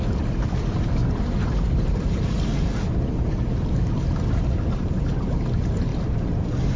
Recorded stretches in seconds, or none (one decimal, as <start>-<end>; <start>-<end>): 2.5-3.3